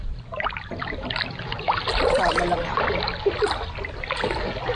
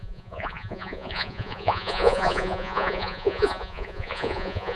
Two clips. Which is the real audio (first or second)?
first